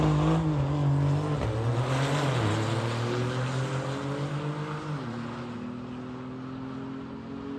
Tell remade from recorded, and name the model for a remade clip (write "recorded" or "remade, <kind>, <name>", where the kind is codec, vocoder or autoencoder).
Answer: recorded